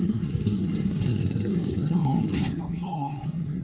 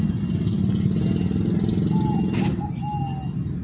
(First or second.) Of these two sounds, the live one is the second